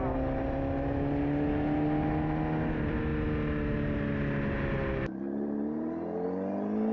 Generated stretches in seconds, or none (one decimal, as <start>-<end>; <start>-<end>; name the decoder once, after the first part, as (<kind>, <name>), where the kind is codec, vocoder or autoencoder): none